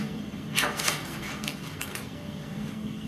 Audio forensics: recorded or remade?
remade